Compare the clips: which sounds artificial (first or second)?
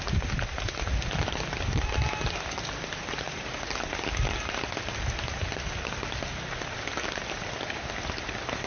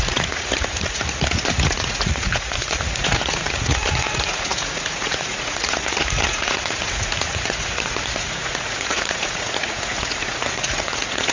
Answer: second